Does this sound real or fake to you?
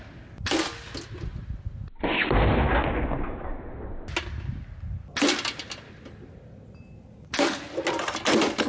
real